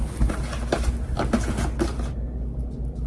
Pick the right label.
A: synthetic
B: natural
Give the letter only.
B